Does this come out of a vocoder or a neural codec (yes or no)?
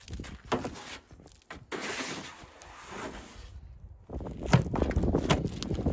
no